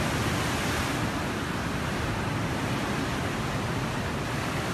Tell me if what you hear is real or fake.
real